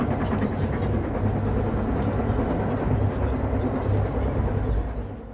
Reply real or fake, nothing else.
real